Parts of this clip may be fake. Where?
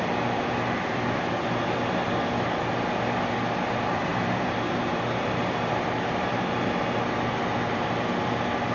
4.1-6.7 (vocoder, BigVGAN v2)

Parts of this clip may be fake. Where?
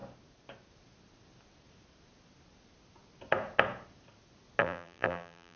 4.6-5.6 (vocoder, BigVGAN v2)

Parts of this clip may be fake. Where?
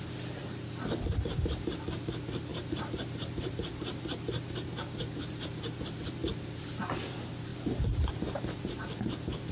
0.0-7.5 (vocoder, BigVGAN v2); 8.1-9.5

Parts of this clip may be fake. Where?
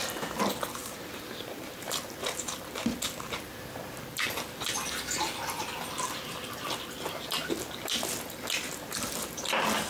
0.8-4.0 (vocoder, BigVGAN v2)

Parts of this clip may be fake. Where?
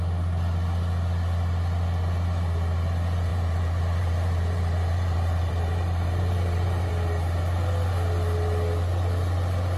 3.3-6.9 (vocoder, BigVGAN v2)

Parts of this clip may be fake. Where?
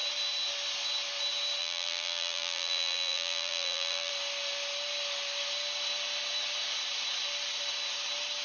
1.6-4.1 (vocoder, BigVGAN v2)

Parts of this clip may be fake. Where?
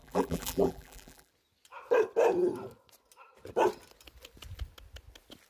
0.0-1.3 (vocoder, BigVGAN v2)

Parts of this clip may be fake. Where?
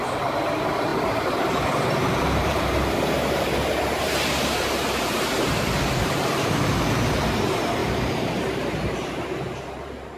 0.0-10.2 (vocoder, BigVGAN v2)